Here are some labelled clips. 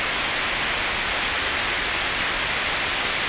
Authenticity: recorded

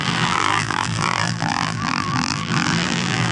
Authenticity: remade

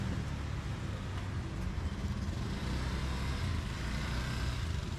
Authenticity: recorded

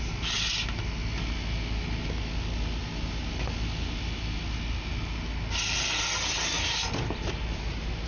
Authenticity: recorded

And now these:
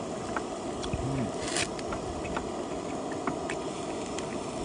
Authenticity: recorded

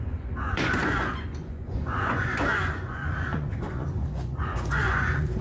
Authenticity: remade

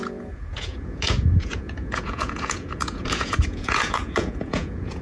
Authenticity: remade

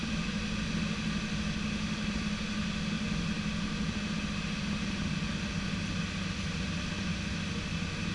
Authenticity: recorded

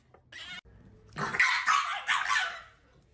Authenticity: recorded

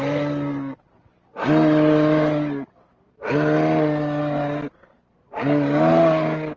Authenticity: recorded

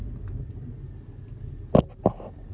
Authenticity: recorded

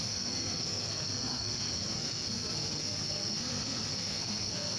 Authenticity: remade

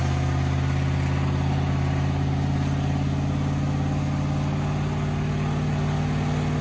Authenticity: recorded